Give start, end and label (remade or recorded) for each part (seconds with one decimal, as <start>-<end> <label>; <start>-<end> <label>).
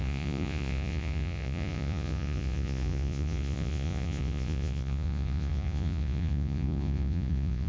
0.0-7.7 remade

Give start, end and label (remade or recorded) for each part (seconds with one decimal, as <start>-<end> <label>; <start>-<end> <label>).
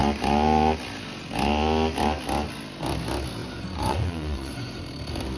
0.0-3.4 recorded; 3.4-4.8 remade; 4.8-5.4 recorded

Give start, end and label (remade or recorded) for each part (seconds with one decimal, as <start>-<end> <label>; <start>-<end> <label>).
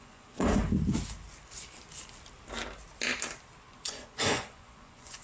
0.0-0.6 remade; 0.6-3.7 recorded; 3.7-5.2 remade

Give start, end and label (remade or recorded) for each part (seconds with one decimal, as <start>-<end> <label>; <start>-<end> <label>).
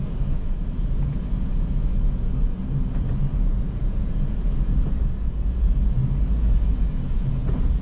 0.0-1.9 remade; 1.9-2.9 recorded; 2.9-6.0 remade; 6.0-6.7 recorded; 6.7-7.8 remade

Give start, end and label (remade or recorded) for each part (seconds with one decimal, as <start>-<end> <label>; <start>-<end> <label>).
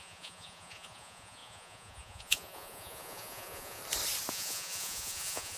0.0-3.8 remade; 3.8-4.3 recorded; 4.3-5.6 remade